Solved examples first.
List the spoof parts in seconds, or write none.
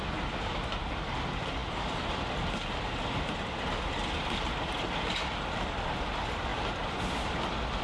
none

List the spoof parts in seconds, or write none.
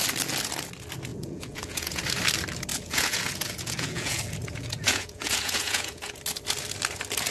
1.1-2.0 (vocoder, Vocos); 2.7-6.2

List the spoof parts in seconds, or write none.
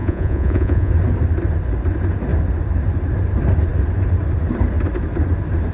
0.0-0.9 (vocoder, Vocos)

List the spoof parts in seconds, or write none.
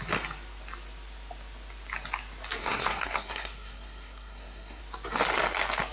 2.6-4.8 (codec, SNAC)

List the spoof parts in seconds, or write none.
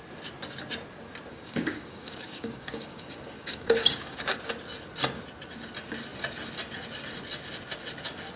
1.3-4.3 (codec, DAC)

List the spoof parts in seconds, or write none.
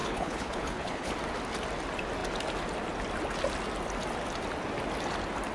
0.0-1.1 (codec, HILCodec)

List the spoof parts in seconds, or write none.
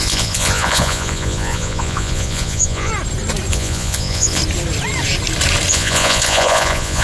0.0-2.9 (vocoder, Vocos); 3.5-4.4; 5.7-7.0